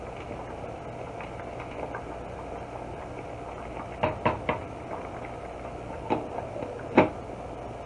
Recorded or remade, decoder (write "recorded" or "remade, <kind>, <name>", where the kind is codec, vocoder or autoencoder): recorded